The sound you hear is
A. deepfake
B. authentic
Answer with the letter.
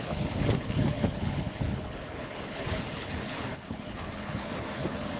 A